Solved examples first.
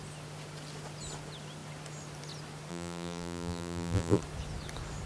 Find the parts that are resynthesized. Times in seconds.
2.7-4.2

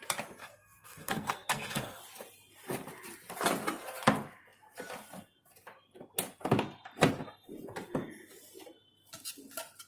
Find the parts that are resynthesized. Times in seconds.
0.4-2.0

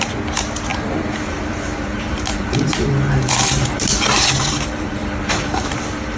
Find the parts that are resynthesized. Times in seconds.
0.7-4.4; 5.0-5.8